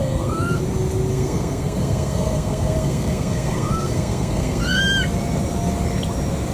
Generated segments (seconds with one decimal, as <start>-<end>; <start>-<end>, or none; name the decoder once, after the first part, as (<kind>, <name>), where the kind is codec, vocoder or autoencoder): 0.0-0.6 (codec, SNAC); 1.1-4.8